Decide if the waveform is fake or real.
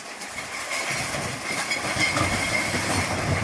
real